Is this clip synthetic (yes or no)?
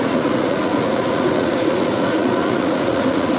yes